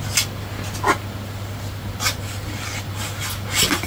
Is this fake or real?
real